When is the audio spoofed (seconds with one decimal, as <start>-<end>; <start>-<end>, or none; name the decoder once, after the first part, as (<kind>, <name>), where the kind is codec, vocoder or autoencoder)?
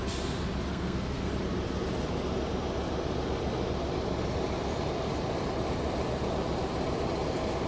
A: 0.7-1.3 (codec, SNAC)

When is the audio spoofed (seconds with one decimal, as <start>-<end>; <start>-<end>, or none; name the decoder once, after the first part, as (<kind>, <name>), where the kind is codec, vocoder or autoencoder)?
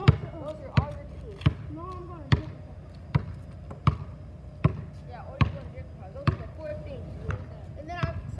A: none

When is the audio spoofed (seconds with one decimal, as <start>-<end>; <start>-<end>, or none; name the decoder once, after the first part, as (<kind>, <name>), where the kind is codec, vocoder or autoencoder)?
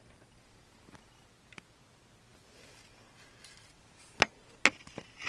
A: none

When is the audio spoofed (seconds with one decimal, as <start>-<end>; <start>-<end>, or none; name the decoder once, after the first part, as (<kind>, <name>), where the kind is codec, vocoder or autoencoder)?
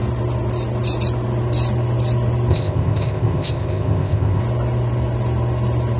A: 2.5-4.4 (codec, ZipCodec)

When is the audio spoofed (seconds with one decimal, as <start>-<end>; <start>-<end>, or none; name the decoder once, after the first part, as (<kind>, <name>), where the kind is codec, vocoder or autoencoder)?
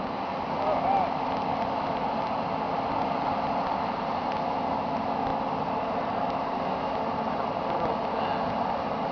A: none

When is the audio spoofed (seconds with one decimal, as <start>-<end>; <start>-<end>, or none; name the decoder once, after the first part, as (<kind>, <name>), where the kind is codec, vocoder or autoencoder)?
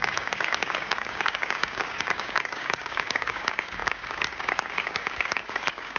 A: 0.0-6.0 (codec, DAC)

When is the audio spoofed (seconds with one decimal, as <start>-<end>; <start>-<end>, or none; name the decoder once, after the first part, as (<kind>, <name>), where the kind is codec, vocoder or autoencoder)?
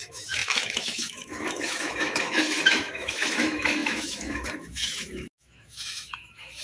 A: 0.0-6.6 (autoencoder, DAC-VAE)